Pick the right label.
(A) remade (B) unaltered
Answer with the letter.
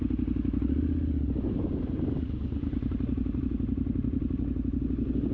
B